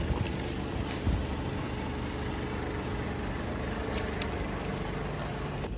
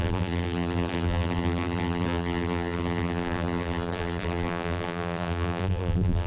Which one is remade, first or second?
second